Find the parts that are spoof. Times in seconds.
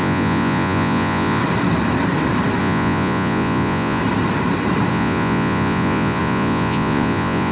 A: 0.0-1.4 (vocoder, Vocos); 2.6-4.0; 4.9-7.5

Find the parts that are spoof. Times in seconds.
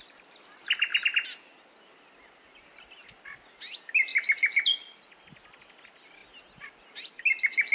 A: none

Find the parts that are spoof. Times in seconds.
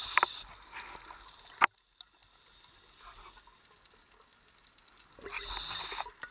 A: none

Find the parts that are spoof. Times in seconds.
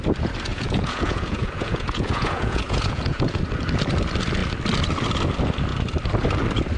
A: 0.5-3.4 (vocoder, Vocos)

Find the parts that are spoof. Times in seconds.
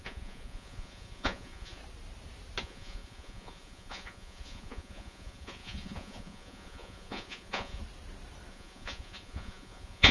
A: 0.0-1.8 (vocoder, Vocos); 2.6-7.8; 8.5-10.1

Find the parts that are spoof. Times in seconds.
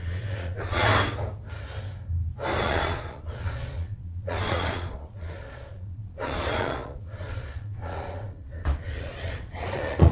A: 0.0-0.9 (vocoder, Vocos); 2.6-10.1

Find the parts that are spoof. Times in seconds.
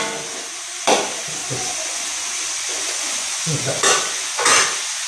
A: 1.4-2.3 (vocoder, Vocos); 2.7-4.6